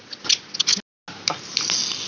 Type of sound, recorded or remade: recorded